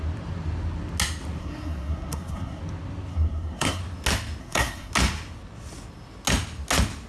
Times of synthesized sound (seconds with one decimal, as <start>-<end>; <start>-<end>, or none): 1.4-2.6; 3.1-3.8; 4.4-4.9